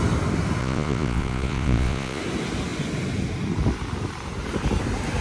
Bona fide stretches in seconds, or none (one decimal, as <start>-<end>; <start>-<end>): 0.0-0.6; 2.2-5.2